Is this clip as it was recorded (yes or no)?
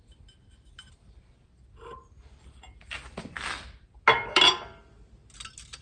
yes